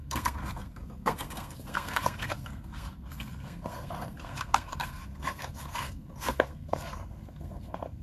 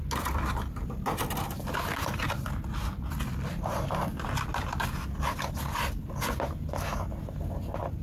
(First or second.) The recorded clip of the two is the second